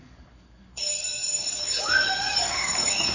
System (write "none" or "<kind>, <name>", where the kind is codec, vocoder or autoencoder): codec, DAC